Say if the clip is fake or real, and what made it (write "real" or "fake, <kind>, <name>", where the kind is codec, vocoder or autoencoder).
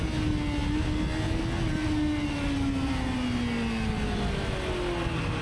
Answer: real